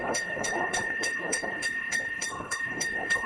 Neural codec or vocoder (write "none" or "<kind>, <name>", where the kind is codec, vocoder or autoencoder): codec, HILCodec